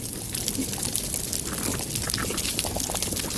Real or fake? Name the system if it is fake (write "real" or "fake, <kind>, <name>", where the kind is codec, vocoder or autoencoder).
real